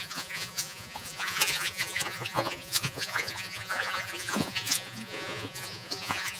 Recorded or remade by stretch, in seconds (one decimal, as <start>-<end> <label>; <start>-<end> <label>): 0.0-6.4 remade